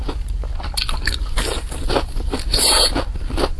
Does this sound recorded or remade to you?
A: recorded